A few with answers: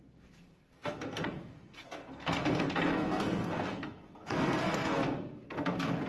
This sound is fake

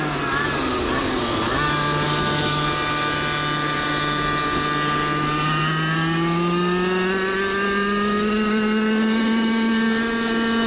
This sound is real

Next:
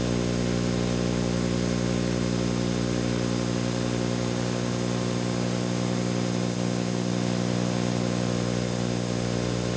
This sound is real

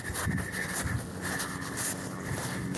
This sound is real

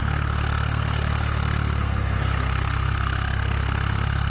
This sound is fake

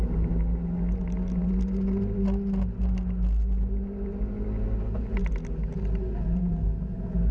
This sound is real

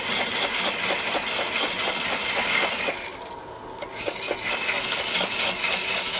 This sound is real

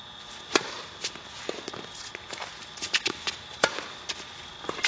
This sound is real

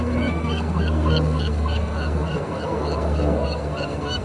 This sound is fake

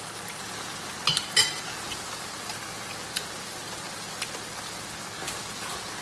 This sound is real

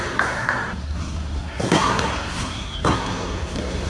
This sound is fake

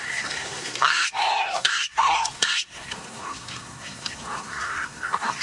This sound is fake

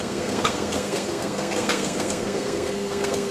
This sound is fake